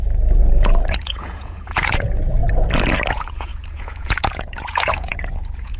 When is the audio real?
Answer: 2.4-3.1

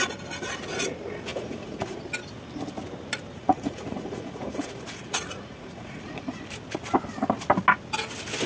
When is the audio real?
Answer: 0.0-1.3; 2.0-3.4; 6.4-8.5

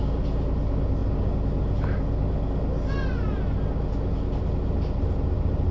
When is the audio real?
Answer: 0.0-5.7